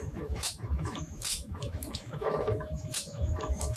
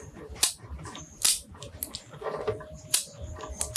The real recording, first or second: second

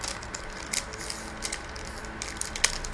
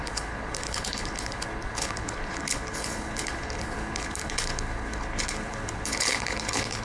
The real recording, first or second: first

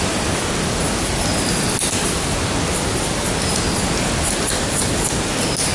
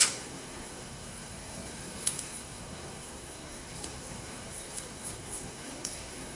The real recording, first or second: first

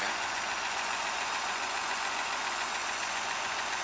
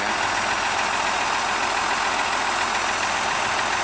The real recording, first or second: second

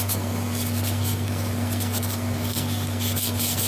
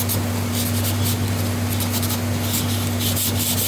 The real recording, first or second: second